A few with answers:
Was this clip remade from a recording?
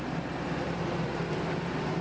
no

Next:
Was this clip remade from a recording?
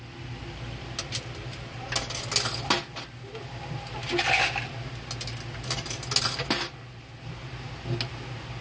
no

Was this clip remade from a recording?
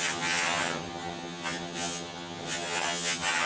yes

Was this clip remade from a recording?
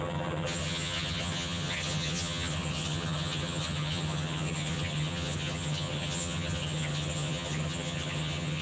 yes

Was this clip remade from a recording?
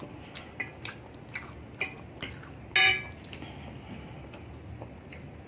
no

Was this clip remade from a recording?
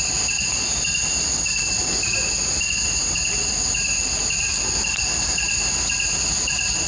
no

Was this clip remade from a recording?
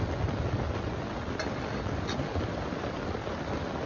no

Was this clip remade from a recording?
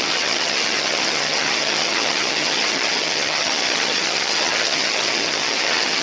yes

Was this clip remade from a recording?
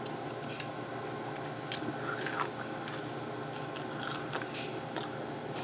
no